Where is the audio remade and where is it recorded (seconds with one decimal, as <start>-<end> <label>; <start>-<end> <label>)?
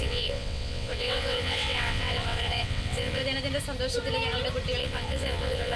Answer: 0.0-3.2 remade; 3.2-4.8 recorded; 4.8-5.8 remade